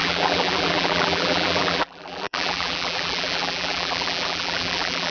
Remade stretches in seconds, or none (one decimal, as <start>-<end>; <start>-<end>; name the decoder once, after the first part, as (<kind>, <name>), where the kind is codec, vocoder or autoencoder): 0.0-5.1 (vocoder, BigVGAN v2)